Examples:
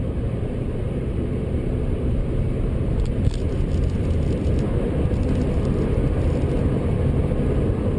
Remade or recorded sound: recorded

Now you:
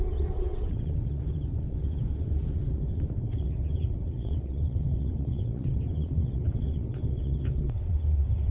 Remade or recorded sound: remade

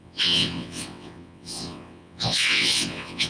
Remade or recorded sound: remade